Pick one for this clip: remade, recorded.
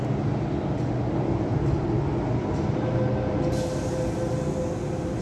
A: recorded